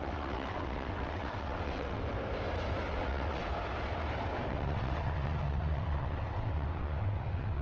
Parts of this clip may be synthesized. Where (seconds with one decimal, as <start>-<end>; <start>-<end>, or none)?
0.0-2.0; 2.9-3.4; 4.5-7.6